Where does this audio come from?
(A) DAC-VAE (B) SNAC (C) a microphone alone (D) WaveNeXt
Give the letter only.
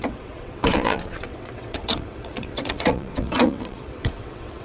D